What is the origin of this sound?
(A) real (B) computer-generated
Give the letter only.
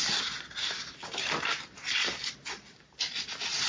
A